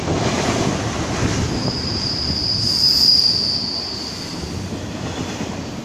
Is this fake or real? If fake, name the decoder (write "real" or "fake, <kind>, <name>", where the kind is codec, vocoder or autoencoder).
real